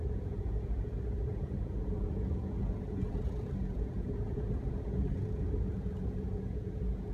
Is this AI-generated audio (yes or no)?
yes